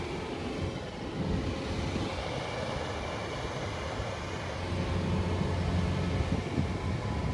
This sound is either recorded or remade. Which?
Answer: recorded